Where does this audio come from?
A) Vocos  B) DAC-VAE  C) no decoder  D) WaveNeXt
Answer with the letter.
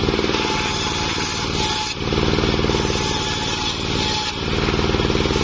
C